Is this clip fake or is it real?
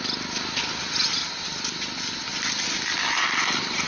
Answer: real